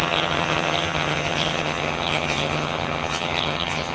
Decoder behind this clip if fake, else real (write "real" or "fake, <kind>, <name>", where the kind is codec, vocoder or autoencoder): fake, vocoder, HiFi-GAN